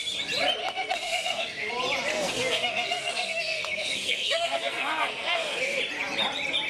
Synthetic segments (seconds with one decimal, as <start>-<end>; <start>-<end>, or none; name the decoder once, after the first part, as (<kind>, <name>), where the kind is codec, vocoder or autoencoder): 0.6-1.7 (codec, SNAC); 2.1-5.8